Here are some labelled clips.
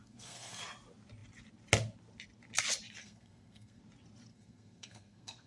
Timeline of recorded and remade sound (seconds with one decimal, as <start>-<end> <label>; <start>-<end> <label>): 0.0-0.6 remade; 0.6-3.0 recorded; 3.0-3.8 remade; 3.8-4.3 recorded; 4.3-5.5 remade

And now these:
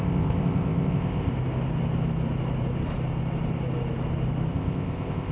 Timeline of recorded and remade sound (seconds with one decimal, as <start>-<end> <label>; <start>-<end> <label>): 0.0-1.3 remade; 1.3-4.5 recorded; 4.5-5.3 remade

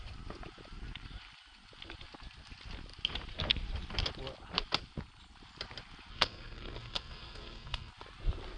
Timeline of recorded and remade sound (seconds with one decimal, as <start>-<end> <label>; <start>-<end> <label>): 0.0-6.1 recorded; 6.1-7.9 remade; 7.9-8.6 recorded